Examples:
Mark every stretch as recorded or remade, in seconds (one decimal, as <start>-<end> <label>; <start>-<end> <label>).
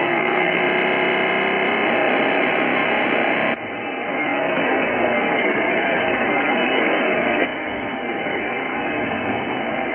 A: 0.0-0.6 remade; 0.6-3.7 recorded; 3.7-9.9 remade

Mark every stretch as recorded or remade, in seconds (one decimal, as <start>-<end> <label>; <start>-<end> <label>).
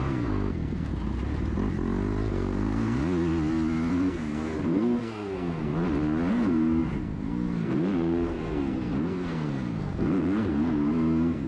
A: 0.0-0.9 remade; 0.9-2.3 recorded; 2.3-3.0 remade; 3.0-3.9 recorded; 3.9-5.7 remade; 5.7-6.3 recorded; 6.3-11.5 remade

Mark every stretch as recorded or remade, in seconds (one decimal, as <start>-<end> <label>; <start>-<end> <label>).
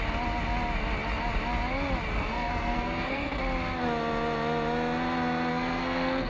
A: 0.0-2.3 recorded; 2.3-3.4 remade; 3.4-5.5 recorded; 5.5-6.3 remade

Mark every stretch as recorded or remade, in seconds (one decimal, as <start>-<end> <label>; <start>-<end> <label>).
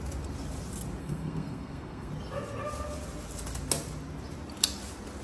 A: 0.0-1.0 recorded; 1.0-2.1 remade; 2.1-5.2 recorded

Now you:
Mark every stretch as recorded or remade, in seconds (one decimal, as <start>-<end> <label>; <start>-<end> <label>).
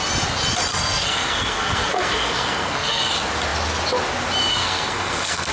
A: 0.0-0.7 recorded; 0.7-3.1 remade; 3.1-4.5 recorded; 4.5-5.5 remade